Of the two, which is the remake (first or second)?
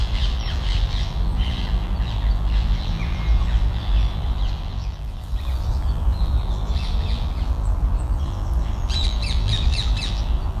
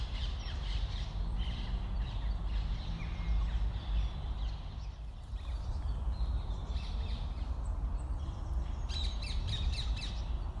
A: first